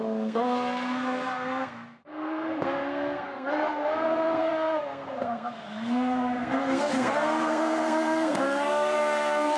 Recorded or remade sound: remade